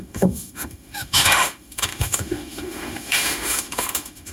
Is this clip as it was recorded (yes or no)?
no